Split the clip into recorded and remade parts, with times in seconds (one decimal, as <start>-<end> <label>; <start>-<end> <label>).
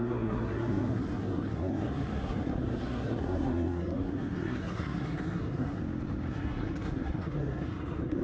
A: 0.0-5.8 remade; 5.8-6.3 recorded; 6.3-8.2 remade